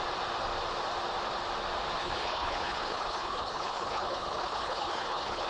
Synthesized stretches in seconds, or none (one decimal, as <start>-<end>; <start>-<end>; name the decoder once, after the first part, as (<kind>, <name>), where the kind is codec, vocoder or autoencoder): 2.0-5.5 (codec, HILCodec)